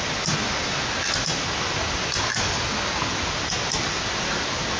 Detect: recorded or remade recorded